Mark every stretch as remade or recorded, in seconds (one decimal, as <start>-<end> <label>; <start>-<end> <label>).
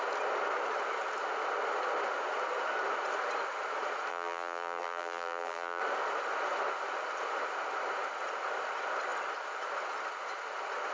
0.0-4.1 recorded; 4.1-5.8 remade; 5.8-10.9 recorded